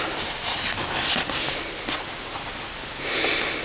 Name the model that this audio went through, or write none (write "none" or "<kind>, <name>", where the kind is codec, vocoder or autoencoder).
none